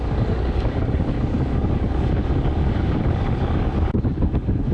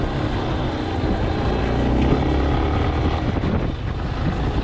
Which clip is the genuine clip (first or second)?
second